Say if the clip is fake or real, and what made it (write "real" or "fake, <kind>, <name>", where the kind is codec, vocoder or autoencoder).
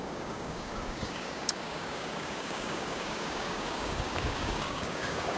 fake, codec, DAC